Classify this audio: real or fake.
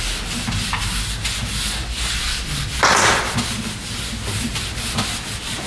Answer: real